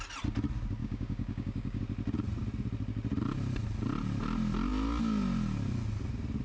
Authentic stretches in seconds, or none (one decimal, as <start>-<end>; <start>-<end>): 0.0-0.8; 1.8-6.4